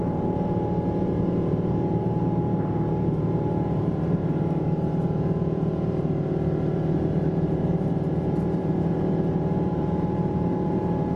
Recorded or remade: remade